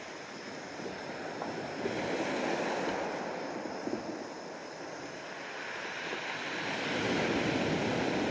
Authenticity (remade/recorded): recorded